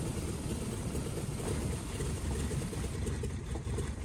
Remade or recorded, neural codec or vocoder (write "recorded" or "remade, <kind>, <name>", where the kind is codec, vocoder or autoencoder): recorded